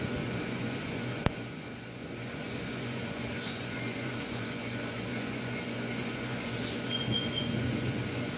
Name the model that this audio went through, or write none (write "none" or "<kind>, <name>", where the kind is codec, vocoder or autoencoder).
vocoder, Vocos